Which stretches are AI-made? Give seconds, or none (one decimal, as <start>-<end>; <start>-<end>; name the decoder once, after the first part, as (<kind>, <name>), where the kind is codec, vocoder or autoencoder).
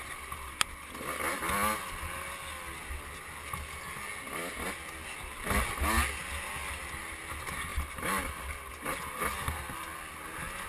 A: none